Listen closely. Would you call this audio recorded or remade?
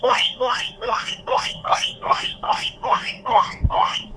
remade